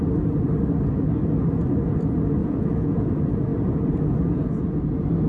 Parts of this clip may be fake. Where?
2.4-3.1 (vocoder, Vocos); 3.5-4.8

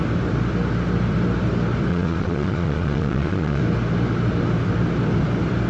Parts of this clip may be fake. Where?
1.9-3.6 (vocoder, Vocos)

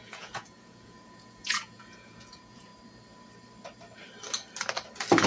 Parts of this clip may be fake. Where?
0.0-2.7 (vocoder, Vocos)

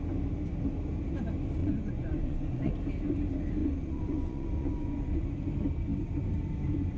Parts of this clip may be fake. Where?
1.6-2.7 (vocoder, Vocos); 3.6-5.2

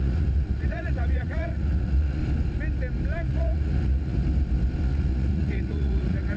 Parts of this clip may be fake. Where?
0.0-2.2 (vocoder, Vocos); 3.3-4.2; 4.8-6.4

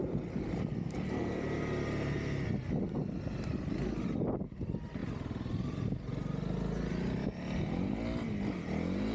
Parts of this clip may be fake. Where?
none